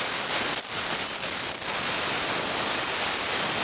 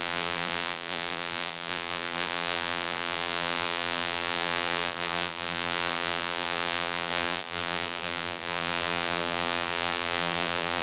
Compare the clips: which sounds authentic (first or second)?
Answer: first